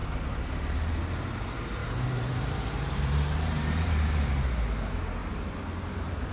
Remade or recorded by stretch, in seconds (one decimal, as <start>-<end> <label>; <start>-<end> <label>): 0.0-1.8 recorded; 1.8-4.5 remade; 4.5-5.2 recorded; 5.2-6.3 remade